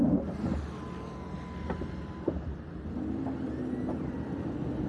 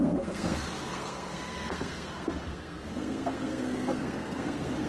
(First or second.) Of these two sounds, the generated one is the second